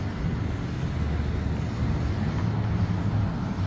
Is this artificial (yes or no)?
no